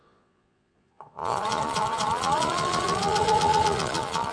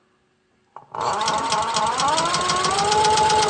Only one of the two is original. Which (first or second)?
second